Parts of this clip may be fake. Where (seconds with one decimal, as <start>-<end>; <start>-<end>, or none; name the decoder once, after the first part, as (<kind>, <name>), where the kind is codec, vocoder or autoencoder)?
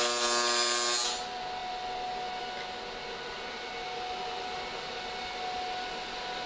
none